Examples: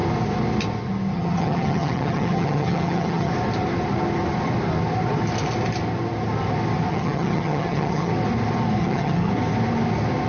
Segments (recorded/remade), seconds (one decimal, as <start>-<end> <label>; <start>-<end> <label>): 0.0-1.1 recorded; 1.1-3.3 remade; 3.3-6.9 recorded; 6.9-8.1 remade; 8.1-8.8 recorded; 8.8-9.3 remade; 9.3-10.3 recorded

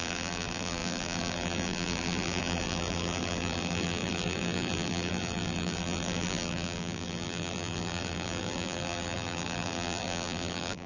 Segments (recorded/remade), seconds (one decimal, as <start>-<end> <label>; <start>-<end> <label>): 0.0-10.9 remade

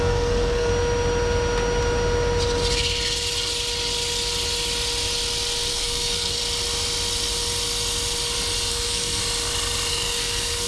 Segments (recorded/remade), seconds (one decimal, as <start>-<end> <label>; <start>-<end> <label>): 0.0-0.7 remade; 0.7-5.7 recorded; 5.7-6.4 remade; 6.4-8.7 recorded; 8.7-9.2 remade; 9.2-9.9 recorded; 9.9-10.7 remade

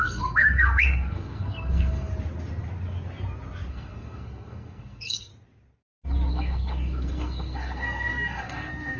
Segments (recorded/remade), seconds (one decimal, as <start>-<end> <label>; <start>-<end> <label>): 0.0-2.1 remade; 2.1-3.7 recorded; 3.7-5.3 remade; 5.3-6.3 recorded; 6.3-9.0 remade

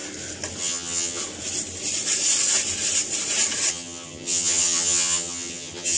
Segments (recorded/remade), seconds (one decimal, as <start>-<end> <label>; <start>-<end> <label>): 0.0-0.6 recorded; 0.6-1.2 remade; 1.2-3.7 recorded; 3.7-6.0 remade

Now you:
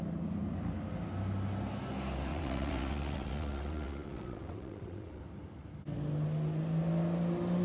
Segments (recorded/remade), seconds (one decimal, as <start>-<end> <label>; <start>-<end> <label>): 0.0-2.3 recorded; 2.3-5.2 remade; 5.2-7.6 recorded